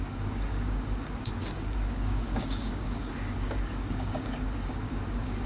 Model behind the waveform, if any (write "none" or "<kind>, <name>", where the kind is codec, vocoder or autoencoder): codec, DAC